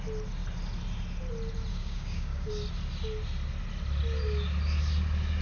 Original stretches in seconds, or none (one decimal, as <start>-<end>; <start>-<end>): 0.0-1.7; 2.5-5.4